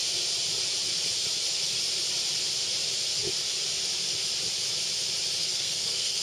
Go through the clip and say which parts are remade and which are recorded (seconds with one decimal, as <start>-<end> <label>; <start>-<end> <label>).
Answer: 0.0-5.4 recorded; 5.4-6.2 remade